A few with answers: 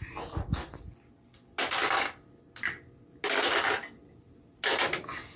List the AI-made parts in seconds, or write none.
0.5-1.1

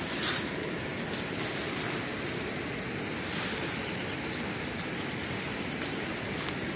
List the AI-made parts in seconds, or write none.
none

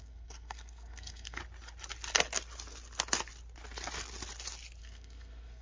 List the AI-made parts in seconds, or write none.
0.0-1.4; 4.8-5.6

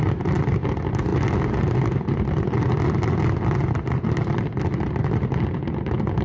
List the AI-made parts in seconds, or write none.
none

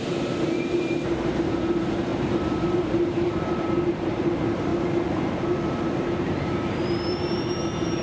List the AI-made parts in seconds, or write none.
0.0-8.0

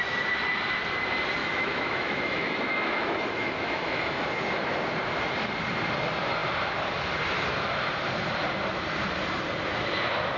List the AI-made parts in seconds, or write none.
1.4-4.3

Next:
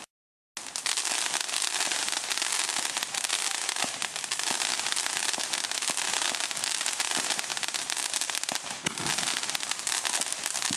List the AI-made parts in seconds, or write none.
none

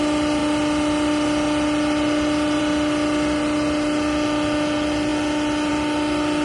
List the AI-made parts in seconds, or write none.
none